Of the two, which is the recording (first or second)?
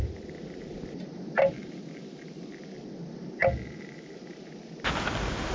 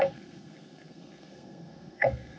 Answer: first